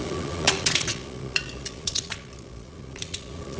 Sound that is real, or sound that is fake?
fake